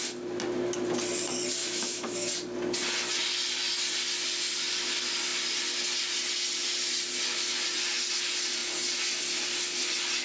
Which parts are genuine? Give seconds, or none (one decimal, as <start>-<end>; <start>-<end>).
0.0-1.6; 2.3-10.2